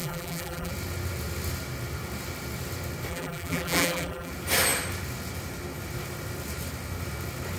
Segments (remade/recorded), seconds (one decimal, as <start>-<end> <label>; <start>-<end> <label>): 0.0-0.7 remade; 0.7-3.1 recorded; 3.1-4.3 remade; 4.3-7.6 recorded